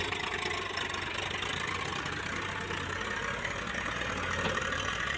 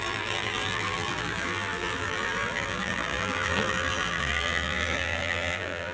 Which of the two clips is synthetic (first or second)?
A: second